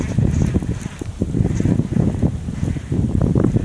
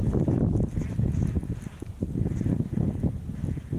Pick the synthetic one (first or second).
first